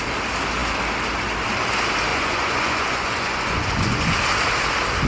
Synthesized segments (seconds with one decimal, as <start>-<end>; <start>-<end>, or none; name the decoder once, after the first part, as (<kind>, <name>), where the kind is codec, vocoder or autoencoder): 2.1-4.1 (vocoder, Vocos)